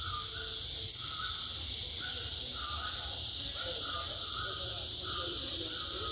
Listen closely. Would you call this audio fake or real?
real